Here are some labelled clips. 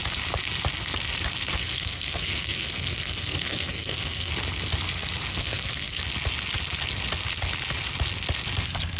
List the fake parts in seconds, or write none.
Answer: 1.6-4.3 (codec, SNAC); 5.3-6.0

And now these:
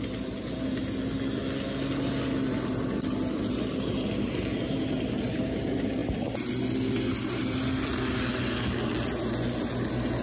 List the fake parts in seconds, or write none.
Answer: none

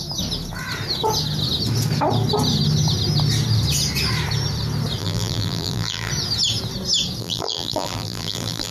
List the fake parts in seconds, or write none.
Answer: 5.0-6.1 (vocoder, BigVGAN v2); 7.2-8.7

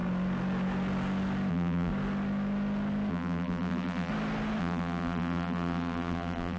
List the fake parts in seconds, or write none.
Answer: 1.5-1.9 (vocoder, BigVGAN v2); 3.1-4.1; 4.6-6.6